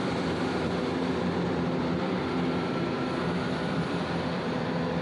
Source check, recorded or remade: remade